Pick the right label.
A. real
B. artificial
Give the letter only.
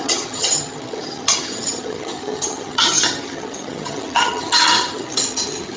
B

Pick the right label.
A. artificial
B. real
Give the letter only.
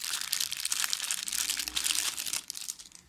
B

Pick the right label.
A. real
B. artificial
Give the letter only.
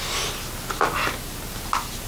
A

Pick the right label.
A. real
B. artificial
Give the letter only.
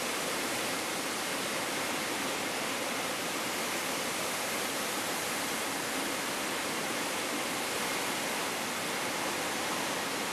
B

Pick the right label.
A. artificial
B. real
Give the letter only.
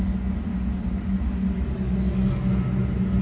B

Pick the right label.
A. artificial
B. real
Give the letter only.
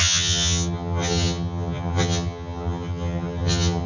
A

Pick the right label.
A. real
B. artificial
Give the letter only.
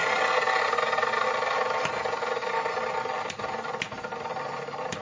A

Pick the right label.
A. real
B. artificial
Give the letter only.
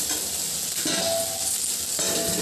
A